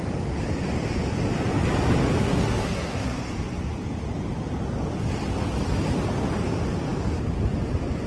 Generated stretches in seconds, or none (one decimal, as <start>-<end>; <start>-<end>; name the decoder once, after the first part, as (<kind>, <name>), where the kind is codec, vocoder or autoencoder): 2.2-3.3 (codec, SNAC)